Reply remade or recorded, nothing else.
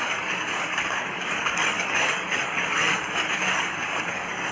remade